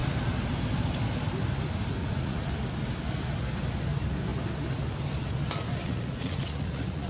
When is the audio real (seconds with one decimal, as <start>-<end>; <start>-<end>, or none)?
0.0-2.0; 2.5-5.8